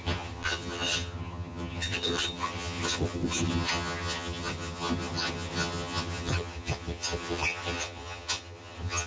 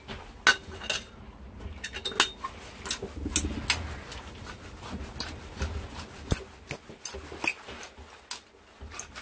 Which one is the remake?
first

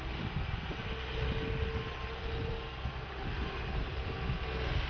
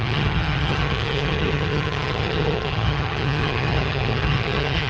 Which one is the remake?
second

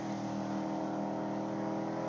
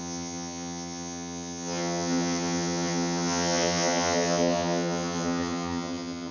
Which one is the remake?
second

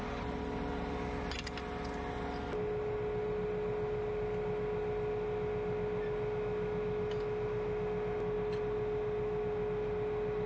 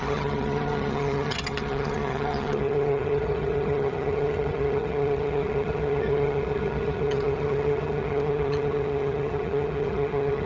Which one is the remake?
second